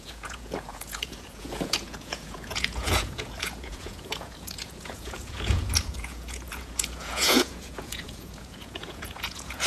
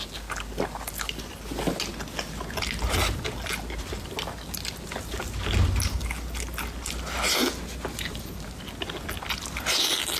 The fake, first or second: first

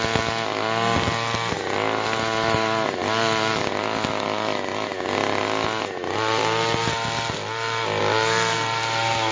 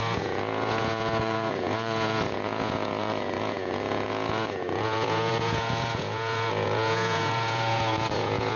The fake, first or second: second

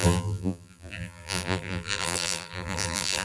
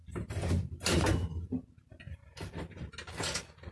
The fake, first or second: first